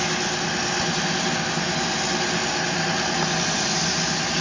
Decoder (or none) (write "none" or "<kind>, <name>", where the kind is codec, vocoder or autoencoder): none